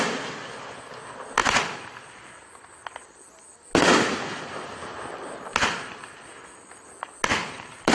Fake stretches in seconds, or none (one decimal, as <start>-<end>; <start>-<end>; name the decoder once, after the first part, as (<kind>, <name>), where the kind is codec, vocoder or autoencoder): none